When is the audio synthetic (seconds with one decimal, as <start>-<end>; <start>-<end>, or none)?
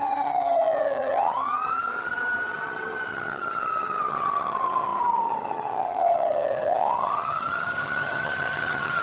0.0-9.0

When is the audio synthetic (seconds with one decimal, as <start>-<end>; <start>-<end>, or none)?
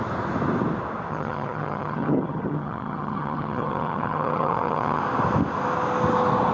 1.1-5.0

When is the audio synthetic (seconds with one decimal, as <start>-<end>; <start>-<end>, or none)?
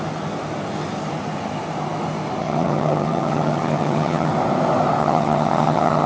2.4-4.3; 5.0-6.1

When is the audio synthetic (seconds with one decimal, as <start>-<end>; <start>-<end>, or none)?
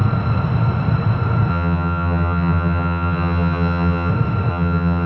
1.5-4.1; 4.5-5.1